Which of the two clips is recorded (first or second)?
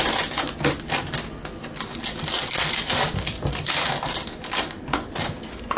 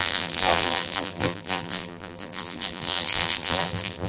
first